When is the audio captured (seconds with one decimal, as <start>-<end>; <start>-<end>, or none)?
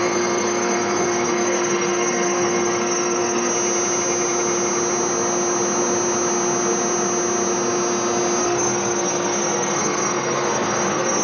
3.5-8.4